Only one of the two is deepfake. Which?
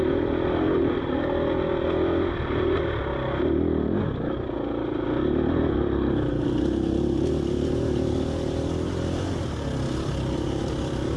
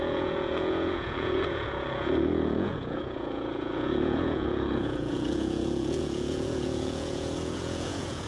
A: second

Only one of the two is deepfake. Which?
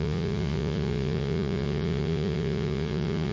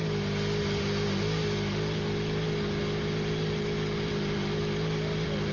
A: first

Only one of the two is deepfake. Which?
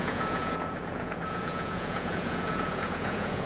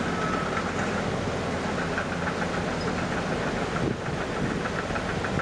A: first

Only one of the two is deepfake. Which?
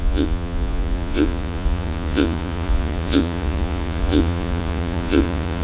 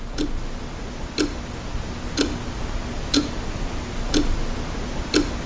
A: first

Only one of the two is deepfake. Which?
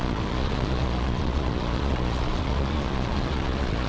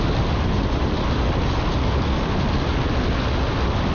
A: first